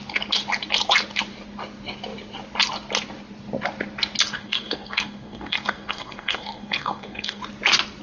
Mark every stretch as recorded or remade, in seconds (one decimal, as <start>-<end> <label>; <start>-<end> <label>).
0.0-4.3 recorded; 4.3-7.4 remade; 7.4-8.0 recorded